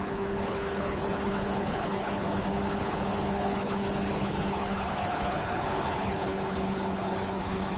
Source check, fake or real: fake